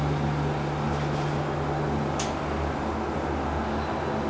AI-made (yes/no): no